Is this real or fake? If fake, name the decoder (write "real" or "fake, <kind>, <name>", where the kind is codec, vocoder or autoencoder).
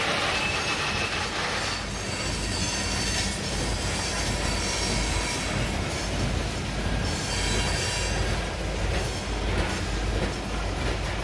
real